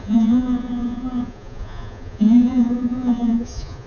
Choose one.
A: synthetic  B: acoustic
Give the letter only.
A